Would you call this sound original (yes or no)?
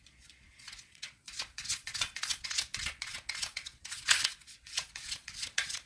no